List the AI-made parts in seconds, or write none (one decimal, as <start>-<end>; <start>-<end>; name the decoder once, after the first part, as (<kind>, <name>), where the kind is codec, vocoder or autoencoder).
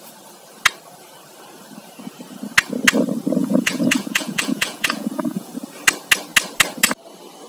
3.4-5.5 (vocoder, Vocos)